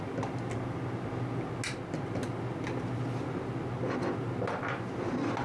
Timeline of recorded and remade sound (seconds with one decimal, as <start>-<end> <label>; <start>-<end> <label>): 0.0-5.4 recorded